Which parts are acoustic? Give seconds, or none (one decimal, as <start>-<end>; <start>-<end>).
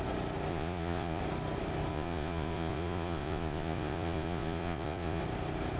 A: 0.0-0.5; 1.2-1.9; 5.2-5.8